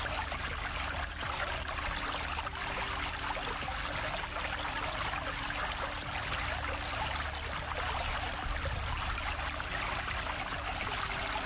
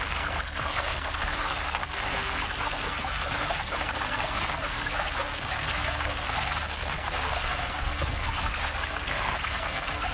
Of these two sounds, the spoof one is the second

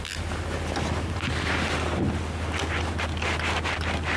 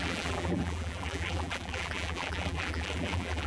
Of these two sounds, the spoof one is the second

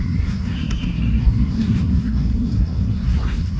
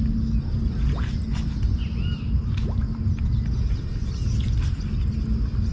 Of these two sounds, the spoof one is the first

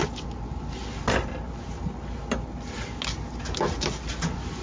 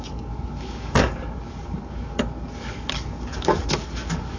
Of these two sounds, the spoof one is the second